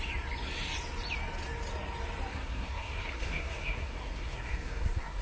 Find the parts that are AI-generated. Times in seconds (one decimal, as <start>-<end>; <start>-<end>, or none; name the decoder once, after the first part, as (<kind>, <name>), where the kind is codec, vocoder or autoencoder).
2.3-5.2 (codec, SNAC)